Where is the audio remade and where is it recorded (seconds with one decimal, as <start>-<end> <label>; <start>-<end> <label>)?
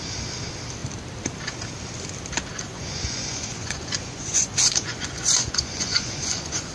0.0-2.5 recorded; 2.5-6.7 remade